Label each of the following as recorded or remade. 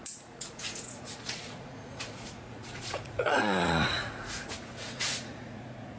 remade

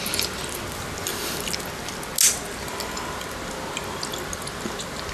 recorded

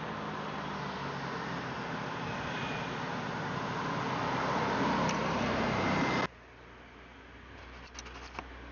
recorded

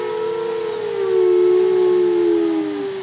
recorded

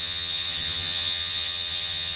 remade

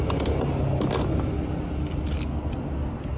recorded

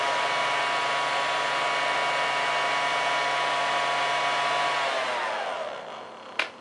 recorded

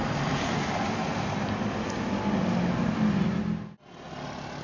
recorded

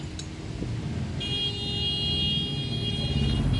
recorded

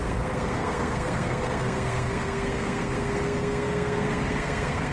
remade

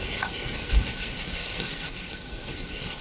remade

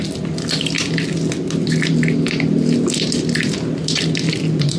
recorded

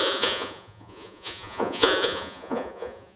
remade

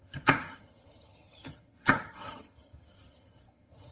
remade